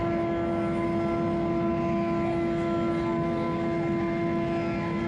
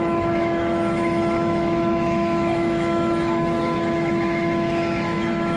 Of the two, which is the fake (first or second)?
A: second